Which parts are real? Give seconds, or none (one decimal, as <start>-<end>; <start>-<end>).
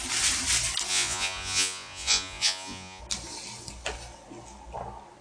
0.0-0.9; 3.0-5.2